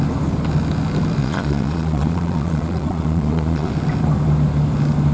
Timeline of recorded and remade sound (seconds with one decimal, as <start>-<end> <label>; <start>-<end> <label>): 0.0-1.2 recorded; 1.2-3.7 remade; 3.7-5.1 recorded